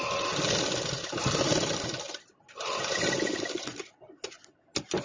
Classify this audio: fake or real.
real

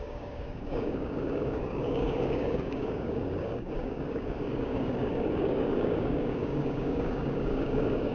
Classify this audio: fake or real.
fake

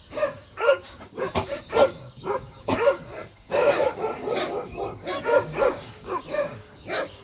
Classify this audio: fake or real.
fake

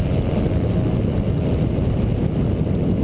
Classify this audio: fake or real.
real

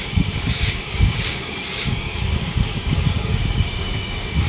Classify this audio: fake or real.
fake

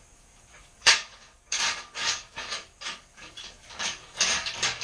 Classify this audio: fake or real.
fake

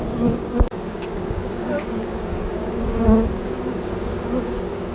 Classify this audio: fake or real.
fake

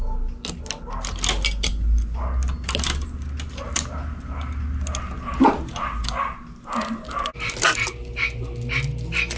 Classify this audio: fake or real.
real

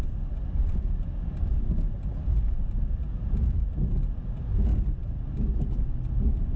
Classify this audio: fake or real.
real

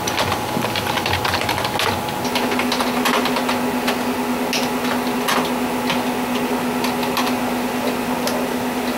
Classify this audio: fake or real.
real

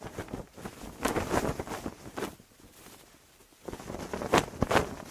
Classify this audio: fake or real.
real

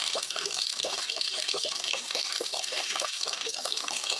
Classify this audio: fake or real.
fake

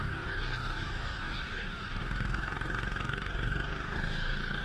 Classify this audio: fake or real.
fake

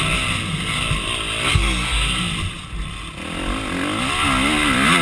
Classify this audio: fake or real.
real